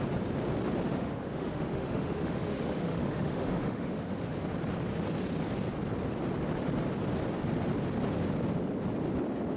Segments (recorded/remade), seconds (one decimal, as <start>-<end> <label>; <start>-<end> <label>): 0.0-1.0 recorded; 1.0-4.3 remade; 4.3-9.6 recorded